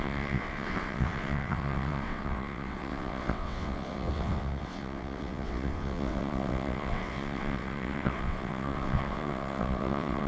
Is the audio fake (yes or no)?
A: yes